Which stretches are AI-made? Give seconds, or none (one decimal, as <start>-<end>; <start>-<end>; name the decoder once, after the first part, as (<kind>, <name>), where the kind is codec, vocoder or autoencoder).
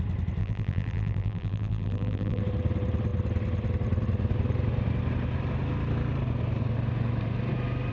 0.4-2.4 (vocoder, BigVGAN v2)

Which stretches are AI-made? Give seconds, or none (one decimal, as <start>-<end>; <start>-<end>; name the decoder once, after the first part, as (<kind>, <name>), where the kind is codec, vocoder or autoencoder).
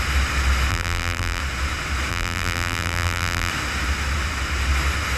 0.7-1.4 (vocoder, BigVGAN v2); 2.1-3.5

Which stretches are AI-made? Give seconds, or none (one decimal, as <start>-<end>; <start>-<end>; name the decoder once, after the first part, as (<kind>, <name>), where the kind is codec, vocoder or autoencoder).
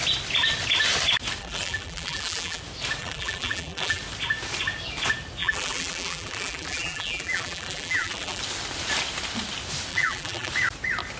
1.4-2.6 (vocoder, BigVGAN v2); 3.0-4.0; 5.4-8.4; 9.9-10.5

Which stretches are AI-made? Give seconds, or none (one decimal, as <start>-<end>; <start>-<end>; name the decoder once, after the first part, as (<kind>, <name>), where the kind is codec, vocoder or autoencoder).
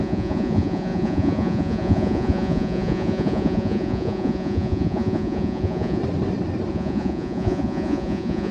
0.0-6.0 (vocoder, Vocos); 6.7-8.5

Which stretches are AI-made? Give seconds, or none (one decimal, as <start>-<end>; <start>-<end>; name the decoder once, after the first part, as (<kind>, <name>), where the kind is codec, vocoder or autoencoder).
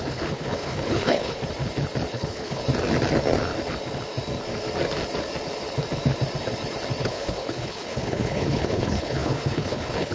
0.0-1.4 (codec, HILCodec); 2.1-2.6; 7.0-10.1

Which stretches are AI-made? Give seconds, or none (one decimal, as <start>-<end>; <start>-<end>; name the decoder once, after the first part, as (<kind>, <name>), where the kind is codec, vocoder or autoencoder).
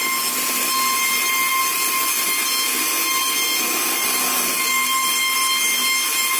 none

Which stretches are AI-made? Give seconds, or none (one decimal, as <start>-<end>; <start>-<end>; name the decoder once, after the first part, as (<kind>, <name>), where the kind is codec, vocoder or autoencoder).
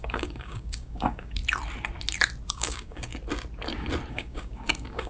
0.0-1.4 (codec, DAC); 2.5-3.1; 4.1-5.1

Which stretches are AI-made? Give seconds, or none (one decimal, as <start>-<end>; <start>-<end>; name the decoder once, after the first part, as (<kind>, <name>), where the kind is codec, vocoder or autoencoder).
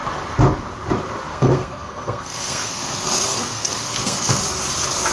1.3-4.4 (codec, SNAC)